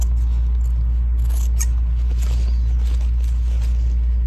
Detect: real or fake real